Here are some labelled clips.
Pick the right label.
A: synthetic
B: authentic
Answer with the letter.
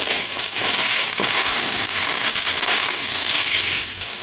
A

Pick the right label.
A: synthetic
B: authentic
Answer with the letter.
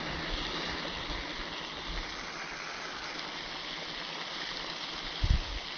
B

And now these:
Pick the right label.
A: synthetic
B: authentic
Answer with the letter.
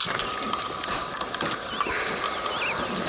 B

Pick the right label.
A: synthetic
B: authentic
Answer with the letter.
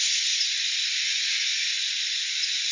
B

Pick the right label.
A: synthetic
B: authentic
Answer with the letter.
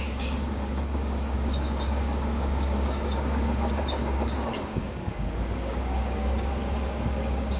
A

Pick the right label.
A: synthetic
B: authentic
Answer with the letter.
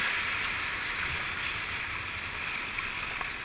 B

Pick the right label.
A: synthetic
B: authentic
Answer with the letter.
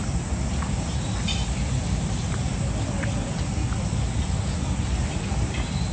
B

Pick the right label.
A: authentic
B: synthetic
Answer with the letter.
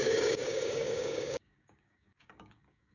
B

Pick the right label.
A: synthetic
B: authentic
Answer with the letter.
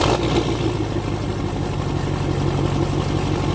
B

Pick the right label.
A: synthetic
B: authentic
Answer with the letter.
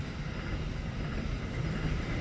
B